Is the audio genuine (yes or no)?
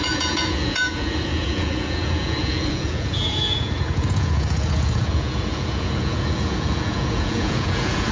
no